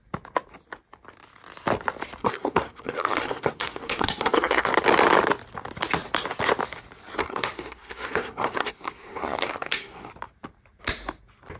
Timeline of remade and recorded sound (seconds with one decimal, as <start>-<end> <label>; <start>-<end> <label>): 0.0-2.2 recorded; 2.2-4.7 remade; 4.7-7.2 recorded; 7.2-10.1 remade; 10.1-11.6 recorded